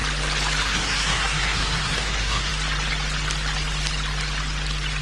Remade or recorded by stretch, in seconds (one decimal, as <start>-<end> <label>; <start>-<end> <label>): 0.0-0.6 recorded; 0.6-2.5 remade; 2.5-5.0 recorded